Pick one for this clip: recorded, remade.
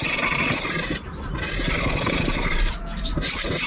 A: recorded